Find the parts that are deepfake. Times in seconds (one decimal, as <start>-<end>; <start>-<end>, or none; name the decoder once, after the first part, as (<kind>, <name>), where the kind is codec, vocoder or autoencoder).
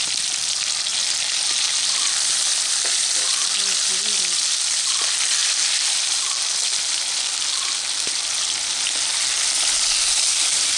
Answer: none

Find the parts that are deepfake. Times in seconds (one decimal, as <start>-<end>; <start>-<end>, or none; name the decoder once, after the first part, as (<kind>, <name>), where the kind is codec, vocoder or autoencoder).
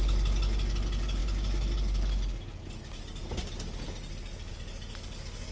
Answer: none